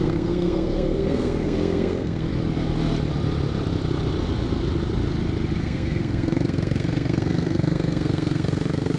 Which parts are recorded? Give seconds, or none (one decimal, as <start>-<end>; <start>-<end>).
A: 2.3-5.6